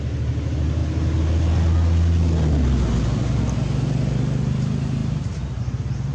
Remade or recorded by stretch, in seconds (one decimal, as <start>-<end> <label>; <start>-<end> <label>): 0.0-6.1 recorded